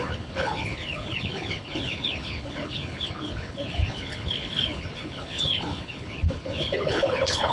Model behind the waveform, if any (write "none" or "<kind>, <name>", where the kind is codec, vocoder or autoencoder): codec, HILCodec